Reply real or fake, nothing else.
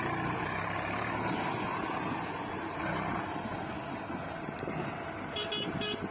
real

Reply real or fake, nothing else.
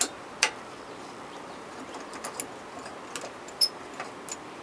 real